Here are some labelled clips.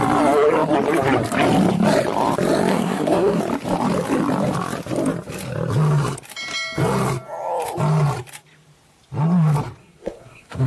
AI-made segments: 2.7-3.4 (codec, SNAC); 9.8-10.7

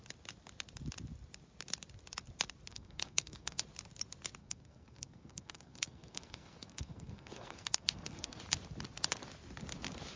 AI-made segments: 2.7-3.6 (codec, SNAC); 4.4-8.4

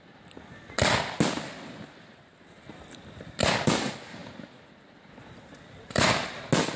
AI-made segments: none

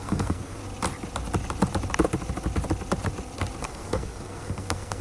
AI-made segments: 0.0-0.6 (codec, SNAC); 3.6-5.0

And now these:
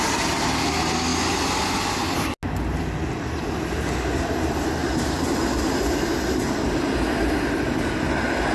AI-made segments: none